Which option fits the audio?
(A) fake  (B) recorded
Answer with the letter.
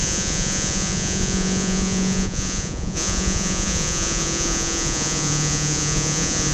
A